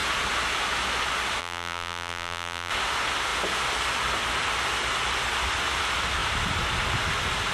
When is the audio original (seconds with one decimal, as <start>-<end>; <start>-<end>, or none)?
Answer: 0.0-1.4; 2.7-7.5